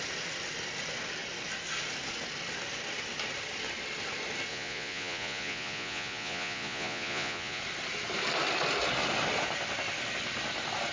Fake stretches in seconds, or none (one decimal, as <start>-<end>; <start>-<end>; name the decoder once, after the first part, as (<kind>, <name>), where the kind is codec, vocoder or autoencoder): 4.5-7.6 (vocoder, Vocos)

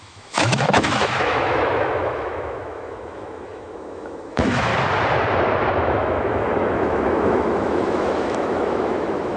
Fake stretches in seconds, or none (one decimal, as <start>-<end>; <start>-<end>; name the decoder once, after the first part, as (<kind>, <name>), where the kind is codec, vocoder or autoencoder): 0.0-4.7 (autoencoder, DAC-VAE); 5.7-9.4

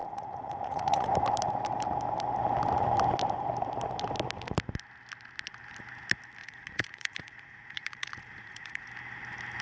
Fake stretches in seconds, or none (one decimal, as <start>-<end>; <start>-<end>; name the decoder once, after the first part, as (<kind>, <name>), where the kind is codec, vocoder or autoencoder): 0.0-1.1 (vocoder, Vocos); 6.4-8.9

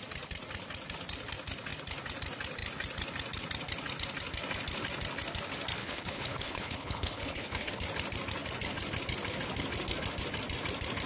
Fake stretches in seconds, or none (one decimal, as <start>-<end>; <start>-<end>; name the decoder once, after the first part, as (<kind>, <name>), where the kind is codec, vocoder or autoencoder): 5.8-7.7 (codec, HILCodec)